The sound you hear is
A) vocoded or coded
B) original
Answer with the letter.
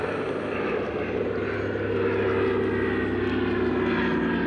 B